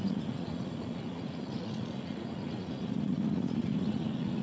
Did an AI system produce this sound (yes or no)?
yes